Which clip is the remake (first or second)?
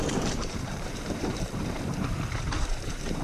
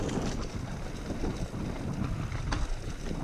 first